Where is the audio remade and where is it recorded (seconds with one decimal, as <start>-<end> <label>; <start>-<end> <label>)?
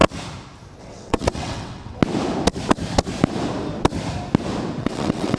0.0-0.8 recorded; 0.8-2.0 remade; 2.0-4.8 recorded; 4.8-5.4 remade